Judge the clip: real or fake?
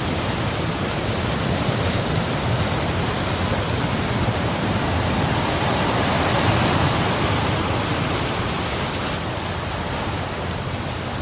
real